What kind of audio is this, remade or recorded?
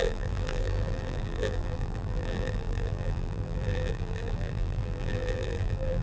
remade